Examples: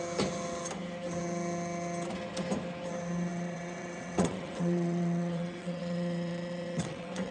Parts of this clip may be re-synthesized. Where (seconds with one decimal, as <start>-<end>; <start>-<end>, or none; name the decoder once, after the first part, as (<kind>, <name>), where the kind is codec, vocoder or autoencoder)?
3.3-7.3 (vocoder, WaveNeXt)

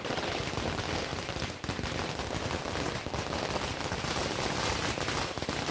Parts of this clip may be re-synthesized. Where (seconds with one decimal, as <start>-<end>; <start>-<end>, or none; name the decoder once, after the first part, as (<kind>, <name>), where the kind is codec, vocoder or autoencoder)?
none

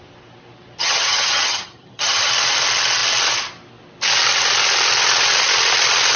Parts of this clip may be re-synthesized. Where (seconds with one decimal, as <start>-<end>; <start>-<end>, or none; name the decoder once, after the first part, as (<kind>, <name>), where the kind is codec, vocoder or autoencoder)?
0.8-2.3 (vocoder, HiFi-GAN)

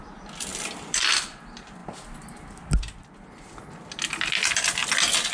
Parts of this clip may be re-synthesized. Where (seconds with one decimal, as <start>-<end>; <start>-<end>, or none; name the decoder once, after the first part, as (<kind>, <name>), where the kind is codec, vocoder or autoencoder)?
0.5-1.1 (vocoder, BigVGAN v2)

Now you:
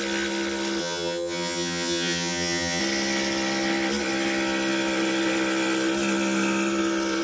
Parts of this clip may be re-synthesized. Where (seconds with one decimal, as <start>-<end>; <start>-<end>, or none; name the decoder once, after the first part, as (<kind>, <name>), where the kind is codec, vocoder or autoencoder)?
0.8-2.8 (vocoder, HiFi-GAN)

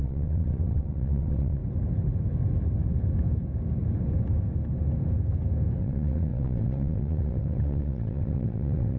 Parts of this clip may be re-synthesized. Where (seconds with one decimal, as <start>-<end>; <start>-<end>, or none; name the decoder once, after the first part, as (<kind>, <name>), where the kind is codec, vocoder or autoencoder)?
0.0-1.6 (vocoder, WaveNeXt); 5.8-9.0

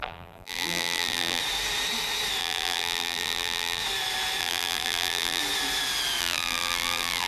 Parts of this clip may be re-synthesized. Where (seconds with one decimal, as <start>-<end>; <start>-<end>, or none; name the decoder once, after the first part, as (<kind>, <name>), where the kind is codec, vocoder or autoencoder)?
0.0-1.4 (vocoder, BigVGAN v2); 2.4-3.8; 4.4-5.4; 6.2-7.3